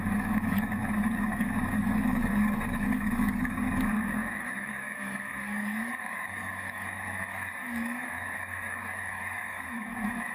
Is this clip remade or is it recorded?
remade